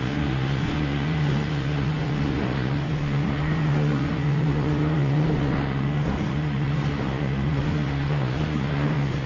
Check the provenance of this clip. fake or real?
fake